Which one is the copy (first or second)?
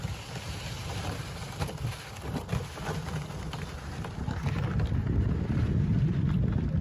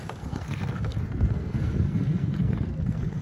second